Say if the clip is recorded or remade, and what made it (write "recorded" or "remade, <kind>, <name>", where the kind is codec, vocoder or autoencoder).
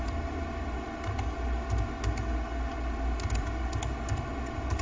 recorded